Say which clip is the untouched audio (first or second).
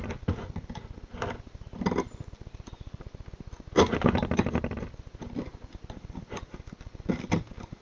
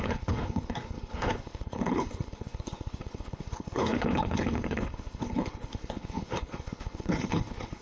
first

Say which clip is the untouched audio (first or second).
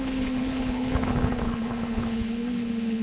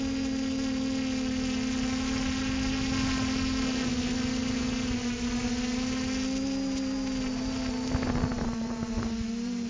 second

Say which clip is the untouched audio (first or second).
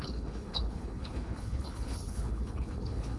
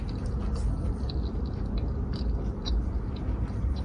second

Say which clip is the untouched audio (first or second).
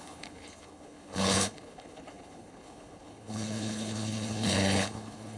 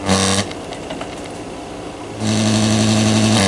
second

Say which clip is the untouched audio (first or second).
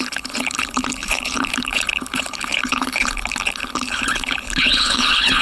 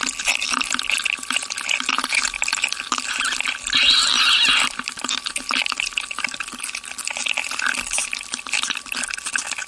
second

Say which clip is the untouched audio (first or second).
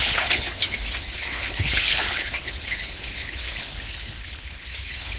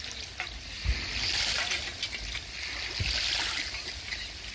second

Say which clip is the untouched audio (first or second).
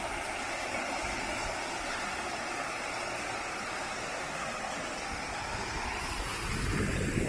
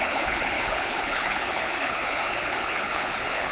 first